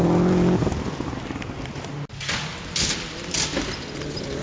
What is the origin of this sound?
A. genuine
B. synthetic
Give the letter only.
A